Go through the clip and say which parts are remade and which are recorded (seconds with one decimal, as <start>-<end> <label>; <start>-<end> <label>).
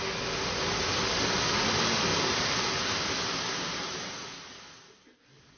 0.0-5.6 recorded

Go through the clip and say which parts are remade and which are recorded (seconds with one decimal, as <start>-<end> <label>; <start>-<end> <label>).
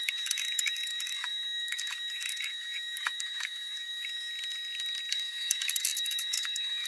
0.0-4.3 remade; 4.3-5.1 recorded; 5.1-6.9 remade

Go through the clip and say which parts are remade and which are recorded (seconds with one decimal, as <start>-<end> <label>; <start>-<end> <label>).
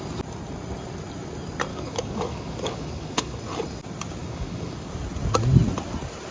0.0-1.7 recorded; 1.7-3.4 remade; 3.4-4.2 recorded; 4.2-4.9 remade; 4.9-6.3 recorded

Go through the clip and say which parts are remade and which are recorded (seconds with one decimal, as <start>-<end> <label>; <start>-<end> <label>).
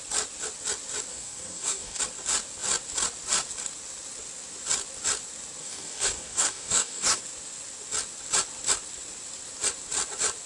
0.0-1.1 recorded; 1.1-2.0 remade; 2.0-5.6 recorded; 5.6-7.2 remade; 7.2-10.5 recorded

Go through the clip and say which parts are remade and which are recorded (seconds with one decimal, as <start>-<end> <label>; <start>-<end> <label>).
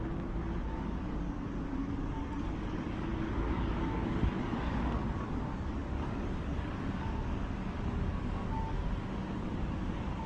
0.0-10.3 remade